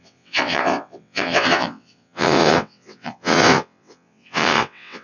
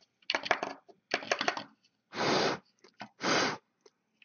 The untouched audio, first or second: second